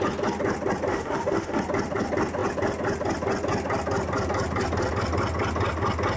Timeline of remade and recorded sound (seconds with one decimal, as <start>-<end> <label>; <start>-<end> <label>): 0.0-0.9 recorded; 0.9-1.6 remade; 1.6-6.2 recorded